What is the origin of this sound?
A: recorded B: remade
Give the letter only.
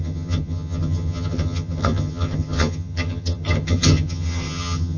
B